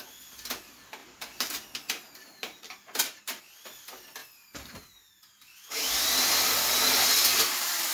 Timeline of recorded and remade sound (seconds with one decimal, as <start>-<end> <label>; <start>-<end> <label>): 0.0-1.0 recorded; 1.0-3.4 remade; 3.4-4.2 recorded; 4.2-5.9 remade; 5.9-7.9 recorded